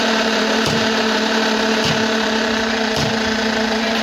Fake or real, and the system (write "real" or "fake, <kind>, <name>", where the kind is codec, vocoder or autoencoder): fake, vocoder, BigVGAN v2